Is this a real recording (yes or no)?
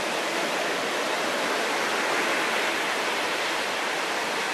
yes